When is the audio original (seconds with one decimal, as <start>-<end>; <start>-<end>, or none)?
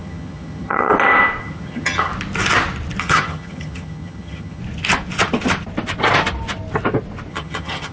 0.9-1.4; 2.1-3.0; 4.6-7.3